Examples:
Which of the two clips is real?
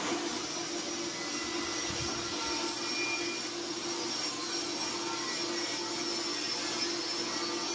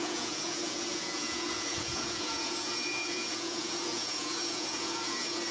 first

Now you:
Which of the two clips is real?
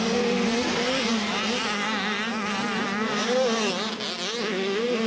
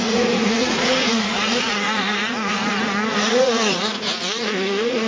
first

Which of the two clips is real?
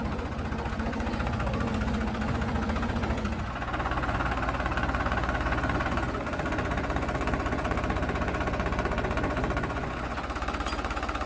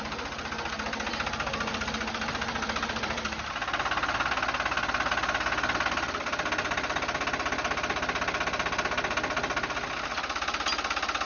second